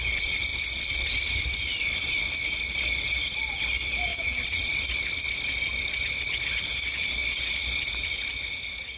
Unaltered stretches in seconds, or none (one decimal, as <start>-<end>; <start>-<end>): 0.0-4.1; 4.8-9.0